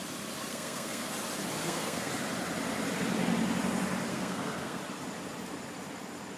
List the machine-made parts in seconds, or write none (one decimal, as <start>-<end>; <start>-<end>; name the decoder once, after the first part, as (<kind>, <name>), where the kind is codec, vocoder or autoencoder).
0.5-1.1 (codec, SNAC); 1.6-2.1; 4.1-4.8